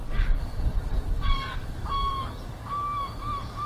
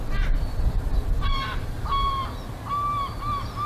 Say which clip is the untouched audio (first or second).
second